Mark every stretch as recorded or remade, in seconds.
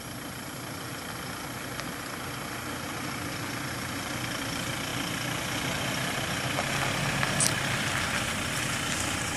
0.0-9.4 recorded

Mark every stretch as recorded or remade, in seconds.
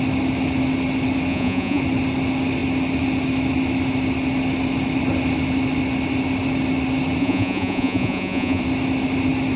0.0-1.3 recorded; 1.3-1.8 remade; 1.8-7.2 recorded; 7.2-8.6 remade; 8.6-9.6 recorded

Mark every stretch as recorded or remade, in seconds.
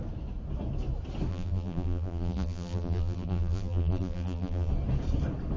0.0-1.3 recorded; 1.3-4.7 remade; 4.7-5.6 recorded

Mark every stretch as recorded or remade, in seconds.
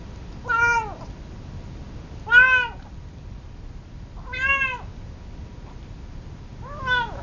0.0-7.2 recorded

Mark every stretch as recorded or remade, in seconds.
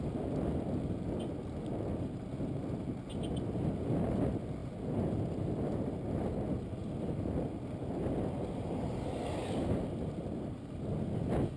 0.0-11.6 recorded